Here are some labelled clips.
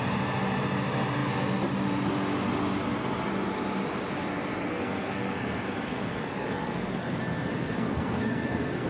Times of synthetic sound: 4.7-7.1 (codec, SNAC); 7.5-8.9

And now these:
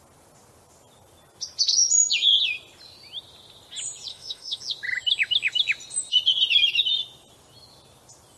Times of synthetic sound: 4.1-4.6 (autoencoder, DAC-VAE)

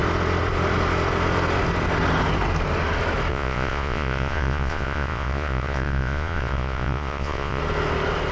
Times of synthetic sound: 3.3-7.6 (vocoder, Vocos)

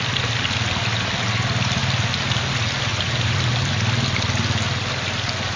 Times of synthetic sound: 2.9-3.7 (vocoder, BigVGAN v2)